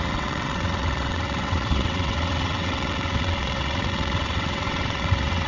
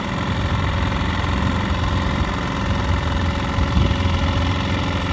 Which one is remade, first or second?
first